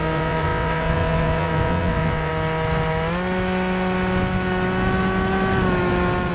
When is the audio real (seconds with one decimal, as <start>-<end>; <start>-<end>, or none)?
2.3-6.3